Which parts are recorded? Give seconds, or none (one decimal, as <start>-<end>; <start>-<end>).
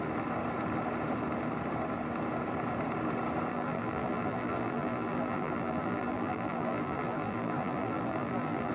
0.0-3.5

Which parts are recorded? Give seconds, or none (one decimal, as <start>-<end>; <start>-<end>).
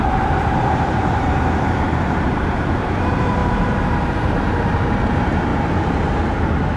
5.5-6.8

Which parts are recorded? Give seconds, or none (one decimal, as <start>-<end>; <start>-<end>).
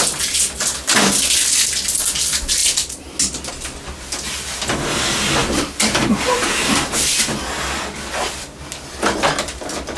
0.0-5.4; 7.2-10.0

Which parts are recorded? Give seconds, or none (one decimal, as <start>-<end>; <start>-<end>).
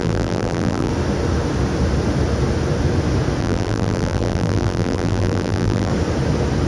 0.9-3.4; 5.9-6.7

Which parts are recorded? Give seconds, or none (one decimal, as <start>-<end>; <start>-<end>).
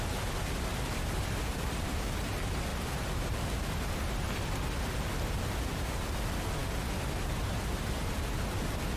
0.0-2.7; 3.8-9.0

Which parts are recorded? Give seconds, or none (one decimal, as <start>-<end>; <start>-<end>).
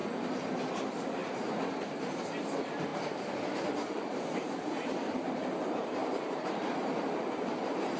none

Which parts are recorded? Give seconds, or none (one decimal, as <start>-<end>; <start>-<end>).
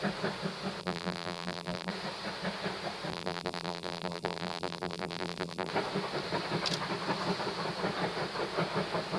0.0-0.8; 1.9-3.1; 5.7-9.2